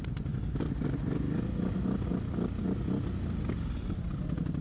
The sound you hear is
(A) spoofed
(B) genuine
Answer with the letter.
B